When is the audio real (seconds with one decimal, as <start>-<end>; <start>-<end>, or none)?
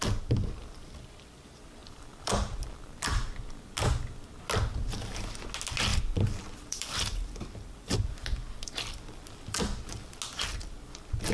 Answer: 0.0-5.9; 10.1-11.3